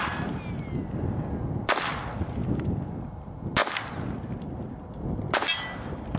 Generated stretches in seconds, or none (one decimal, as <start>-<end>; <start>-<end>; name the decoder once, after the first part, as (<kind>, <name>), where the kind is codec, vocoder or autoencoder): none